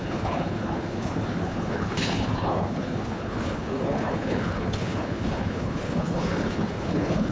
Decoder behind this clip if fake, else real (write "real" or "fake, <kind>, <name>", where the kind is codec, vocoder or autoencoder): fake, codec, HILCodec